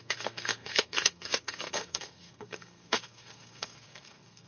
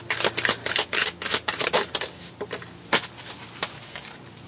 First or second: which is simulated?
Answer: first